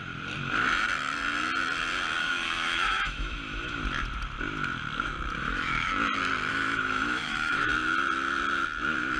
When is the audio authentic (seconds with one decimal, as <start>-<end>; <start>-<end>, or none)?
0.0-2.2; 3.8-5.4; 5.9-6.5; 7.7-9.2